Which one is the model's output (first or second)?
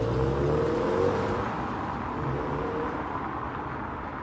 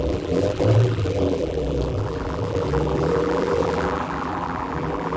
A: second